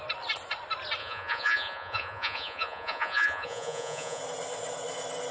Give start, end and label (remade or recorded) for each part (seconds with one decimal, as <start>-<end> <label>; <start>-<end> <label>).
0.0-1.0 recorded; 1.0-4.2 remade; 4.2-5.3 recorded

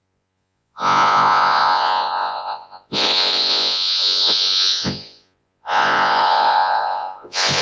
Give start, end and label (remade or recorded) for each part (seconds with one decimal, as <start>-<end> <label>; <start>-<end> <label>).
0.0-7.6 remade